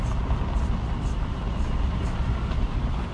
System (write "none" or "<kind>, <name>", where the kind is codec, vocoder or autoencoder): none